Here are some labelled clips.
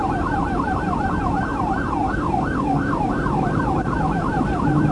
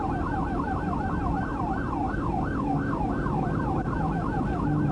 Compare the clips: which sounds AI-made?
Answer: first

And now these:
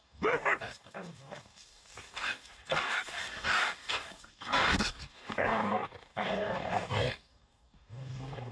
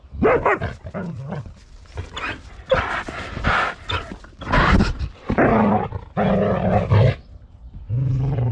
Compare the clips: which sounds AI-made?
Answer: first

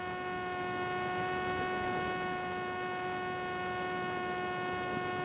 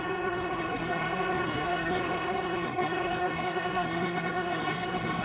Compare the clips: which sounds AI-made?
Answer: second